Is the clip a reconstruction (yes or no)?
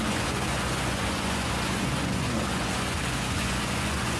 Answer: yes